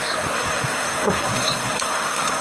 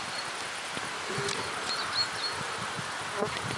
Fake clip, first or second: first